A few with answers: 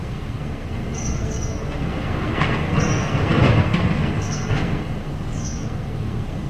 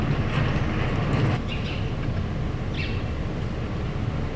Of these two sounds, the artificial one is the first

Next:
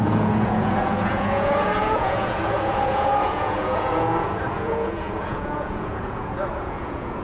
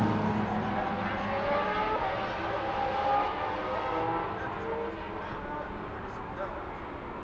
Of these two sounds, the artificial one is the first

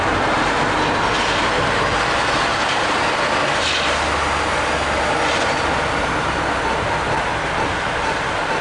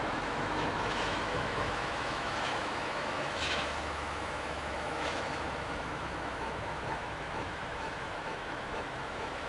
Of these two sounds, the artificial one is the second